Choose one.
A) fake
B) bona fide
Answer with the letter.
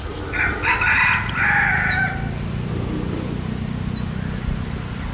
B